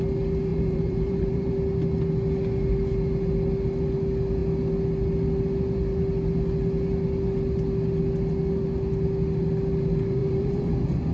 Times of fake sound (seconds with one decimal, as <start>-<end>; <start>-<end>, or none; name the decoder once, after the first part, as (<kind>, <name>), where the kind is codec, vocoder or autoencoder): 0.5-1.5 (vocoder, BigVGAN v2); 10.2-10.7